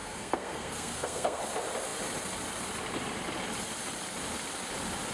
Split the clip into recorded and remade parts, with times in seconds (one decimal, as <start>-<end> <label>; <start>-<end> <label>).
0.0-1.4 remade; 1.4-5.1 recorded